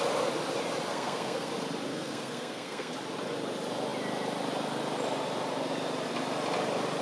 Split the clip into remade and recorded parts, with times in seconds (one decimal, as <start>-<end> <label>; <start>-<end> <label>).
0.0-0.9 recorded; 0.9-1.5 remade; 1.5-1.9 recorded; 1.9-2.9 remade; 2.9-7.0 recorded

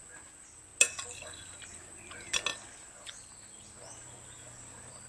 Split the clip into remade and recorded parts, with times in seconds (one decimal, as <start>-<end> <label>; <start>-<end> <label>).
0.0-5.1 recorded

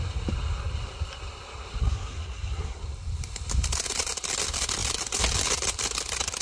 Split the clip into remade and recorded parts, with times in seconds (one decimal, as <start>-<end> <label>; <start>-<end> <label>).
0.0-1.8 recorded; 1.8-2.8 remade; 2.8-6.4 recorded

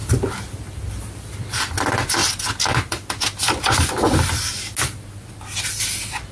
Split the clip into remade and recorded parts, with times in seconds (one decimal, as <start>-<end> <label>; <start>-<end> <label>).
0.0-6.3 recorded

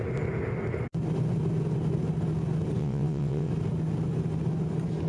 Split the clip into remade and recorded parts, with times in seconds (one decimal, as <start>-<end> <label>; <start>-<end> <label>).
0.0-2.8 recorded; 2.8-3.5 remade; 3.5-5.1 recorded